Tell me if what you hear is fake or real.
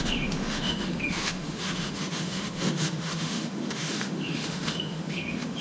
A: fake